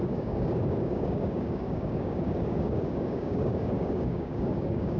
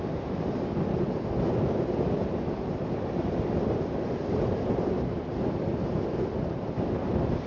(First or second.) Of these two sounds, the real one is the second